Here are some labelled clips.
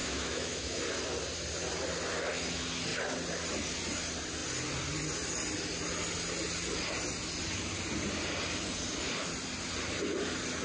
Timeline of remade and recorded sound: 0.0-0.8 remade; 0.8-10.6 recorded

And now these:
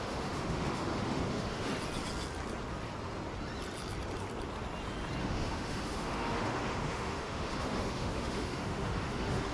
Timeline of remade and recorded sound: 0.0-1.7 remade; 1.7-5.2 recorded; 5.2-9.5 remade

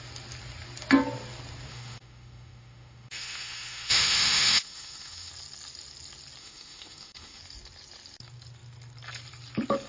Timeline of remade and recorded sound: 0.0-1.7 recorded; 1.7-5.3 remade; 5.3-6.4 recorded; 6.4-7.4 remade; 7.4-9.9 recorded

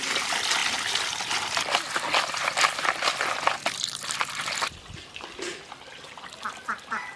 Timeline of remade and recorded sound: 0.0-7.2 recorded

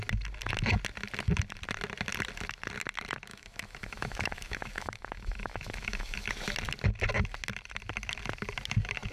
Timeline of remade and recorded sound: 0.0-3.3 recorded; 3.3-6.3 remade; 6.3-9.1 recorded

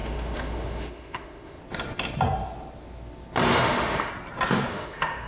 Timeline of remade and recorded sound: 0.0-1.6 remade; 1.6-3.5 recorded; 3.5-4.1 remade; 4.1-4.7 recorded; 4.7-5.3 remade